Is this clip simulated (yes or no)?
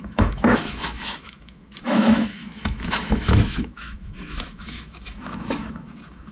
yes